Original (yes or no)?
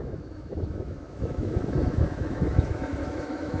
no